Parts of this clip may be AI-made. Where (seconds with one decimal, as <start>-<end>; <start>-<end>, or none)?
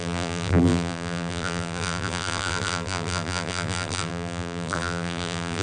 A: 0.0-5.6